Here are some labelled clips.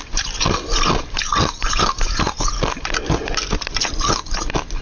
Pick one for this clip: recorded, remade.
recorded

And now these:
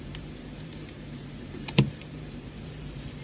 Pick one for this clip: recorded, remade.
remade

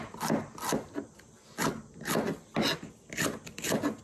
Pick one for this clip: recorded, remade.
recorded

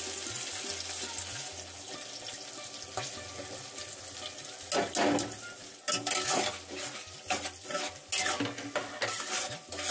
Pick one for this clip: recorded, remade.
recorded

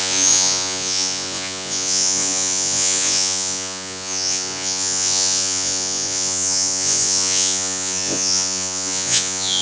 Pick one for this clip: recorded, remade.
remade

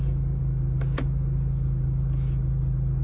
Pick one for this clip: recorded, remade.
recorded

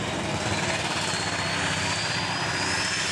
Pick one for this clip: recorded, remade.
recorded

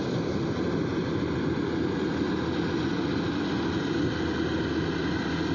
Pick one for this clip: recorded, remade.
recorded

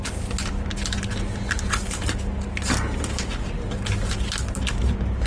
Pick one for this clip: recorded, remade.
recorded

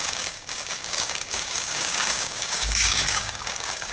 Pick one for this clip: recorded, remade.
remade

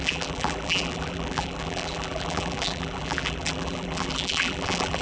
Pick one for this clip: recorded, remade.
remade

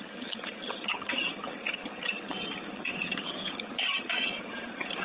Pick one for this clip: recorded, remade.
remade